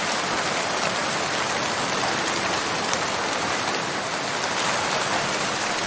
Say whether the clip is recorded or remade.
remade